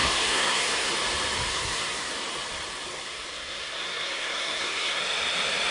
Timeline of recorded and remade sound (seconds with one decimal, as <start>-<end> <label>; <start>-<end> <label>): 0.0-0.9 remade; 0.9-1.5 recorded; 1.5-2.1 remade; 2.1-2.9 recorded; 2.9-5.0 remade; 5.0-5.7 recorded